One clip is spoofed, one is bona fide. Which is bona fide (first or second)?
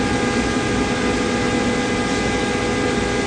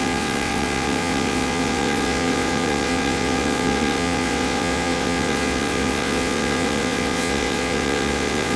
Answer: first